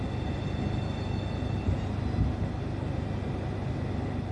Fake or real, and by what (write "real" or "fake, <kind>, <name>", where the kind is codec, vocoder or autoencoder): real